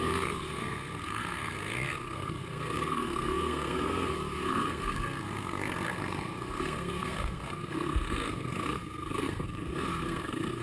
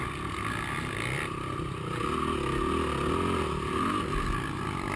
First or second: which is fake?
first